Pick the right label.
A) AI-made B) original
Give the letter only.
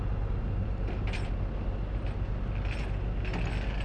B